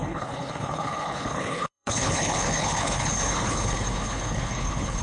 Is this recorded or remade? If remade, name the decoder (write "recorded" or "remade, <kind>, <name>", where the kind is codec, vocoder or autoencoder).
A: remade, codec, HILCodec